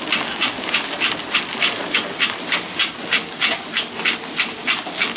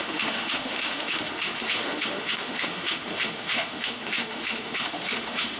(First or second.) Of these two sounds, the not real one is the second